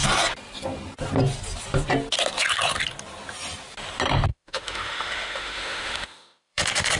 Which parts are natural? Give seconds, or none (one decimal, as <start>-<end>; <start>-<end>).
0.0-4.3; 6.6-7.0